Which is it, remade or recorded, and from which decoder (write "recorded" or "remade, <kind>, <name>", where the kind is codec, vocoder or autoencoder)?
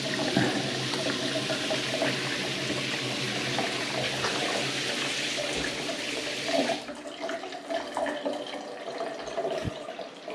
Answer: recorded